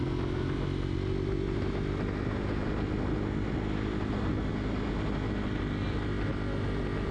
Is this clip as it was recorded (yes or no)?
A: yes